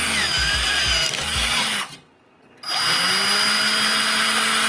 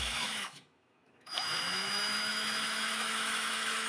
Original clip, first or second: first